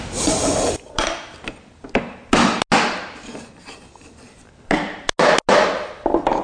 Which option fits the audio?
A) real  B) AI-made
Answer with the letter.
A